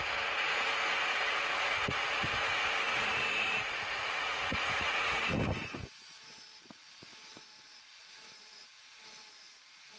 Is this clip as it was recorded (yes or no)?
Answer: no